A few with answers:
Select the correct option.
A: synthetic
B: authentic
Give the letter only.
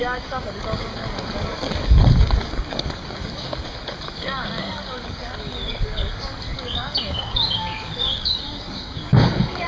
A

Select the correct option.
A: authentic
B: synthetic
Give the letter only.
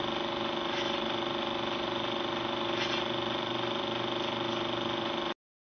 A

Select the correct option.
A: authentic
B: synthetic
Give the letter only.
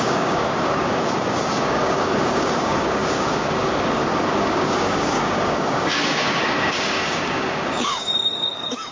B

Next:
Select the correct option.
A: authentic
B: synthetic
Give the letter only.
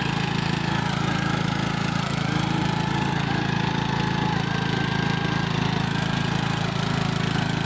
A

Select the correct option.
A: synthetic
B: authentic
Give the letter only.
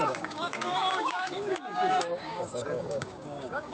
A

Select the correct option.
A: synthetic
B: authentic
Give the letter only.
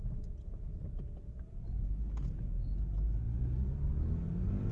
B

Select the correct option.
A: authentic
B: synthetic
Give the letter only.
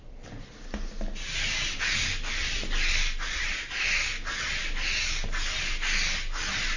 A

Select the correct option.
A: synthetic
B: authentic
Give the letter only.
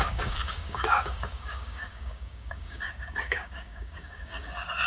A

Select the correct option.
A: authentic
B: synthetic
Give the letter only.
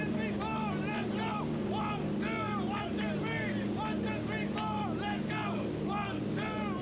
A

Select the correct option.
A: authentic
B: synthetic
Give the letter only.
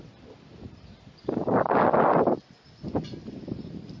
A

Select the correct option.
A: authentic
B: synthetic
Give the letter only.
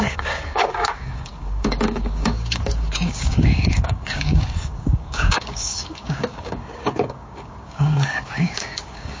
B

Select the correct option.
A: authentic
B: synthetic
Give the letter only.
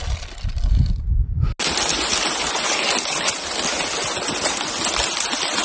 A